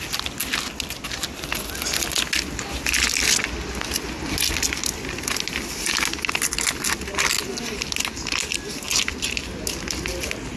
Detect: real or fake real